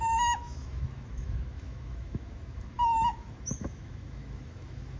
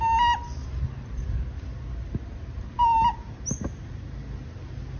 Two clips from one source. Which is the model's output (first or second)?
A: first